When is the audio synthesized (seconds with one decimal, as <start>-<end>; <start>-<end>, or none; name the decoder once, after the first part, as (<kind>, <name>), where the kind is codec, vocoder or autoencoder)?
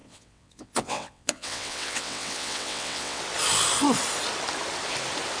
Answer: 0.0-3.2 (vocoder, WaveNeXt)